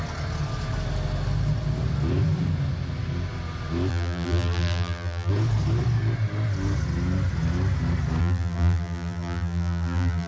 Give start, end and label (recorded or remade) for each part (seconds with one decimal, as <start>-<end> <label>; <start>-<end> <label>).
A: 0.0-3.9 recorded; 3.9-5.3 remade; 5.3-8.2 recorded; 8.2-10.3 remade